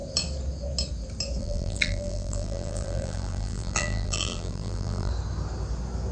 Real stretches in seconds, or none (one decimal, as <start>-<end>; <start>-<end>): 0.0-1.4; 5.1-6.1